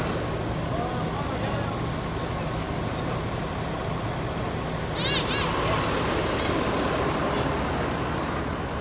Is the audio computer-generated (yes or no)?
no